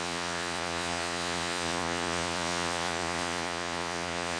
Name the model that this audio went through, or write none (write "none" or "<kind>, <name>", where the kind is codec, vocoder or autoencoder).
vocoder, Vocos